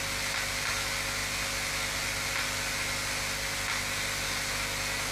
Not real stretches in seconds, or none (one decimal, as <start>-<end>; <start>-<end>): none